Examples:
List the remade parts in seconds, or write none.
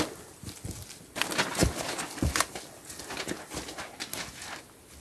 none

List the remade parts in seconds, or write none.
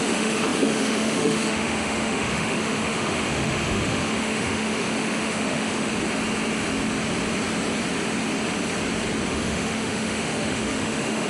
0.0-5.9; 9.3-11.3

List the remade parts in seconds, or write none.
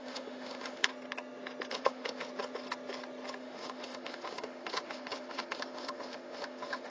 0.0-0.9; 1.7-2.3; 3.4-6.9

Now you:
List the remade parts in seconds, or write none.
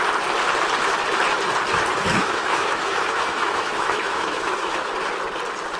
2.1-4.9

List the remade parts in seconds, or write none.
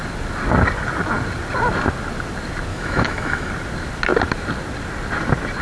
2.7-3.5